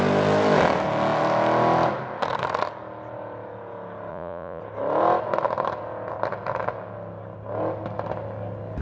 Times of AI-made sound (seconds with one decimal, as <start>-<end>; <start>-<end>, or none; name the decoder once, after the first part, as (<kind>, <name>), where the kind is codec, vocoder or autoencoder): 4.1-4.6 (vocoder, Vocos)